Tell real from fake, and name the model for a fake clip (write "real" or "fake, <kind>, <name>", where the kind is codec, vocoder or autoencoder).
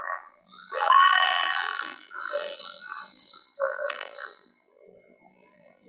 fake, vocoder, BigVGAN v2